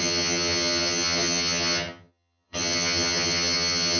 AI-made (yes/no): yes